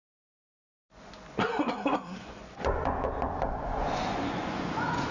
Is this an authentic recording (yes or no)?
no